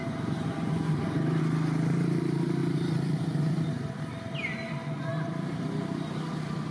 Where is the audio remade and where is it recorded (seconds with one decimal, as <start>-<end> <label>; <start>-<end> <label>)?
0.0-1.4 remade; 1.4-2.6 recorded; 2.6-3.4 remade; 3.4-5.1 recorded; 5.1-6.7 remade